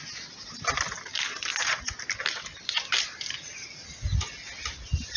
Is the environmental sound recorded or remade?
recorded